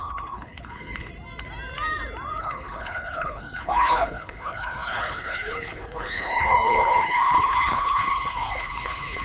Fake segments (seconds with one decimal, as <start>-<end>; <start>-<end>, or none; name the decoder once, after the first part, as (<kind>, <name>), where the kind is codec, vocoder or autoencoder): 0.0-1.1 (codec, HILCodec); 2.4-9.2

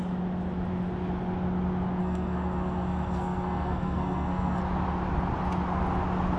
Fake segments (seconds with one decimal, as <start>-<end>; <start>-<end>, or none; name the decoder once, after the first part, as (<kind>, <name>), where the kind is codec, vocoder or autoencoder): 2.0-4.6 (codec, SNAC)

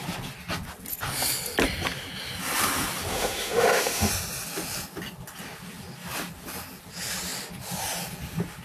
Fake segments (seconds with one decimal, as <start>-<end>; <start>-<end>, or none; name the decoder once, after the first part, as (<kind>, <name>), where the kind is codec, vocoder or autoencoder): 3.1-4.1 (autoencoder, DAC-VAE)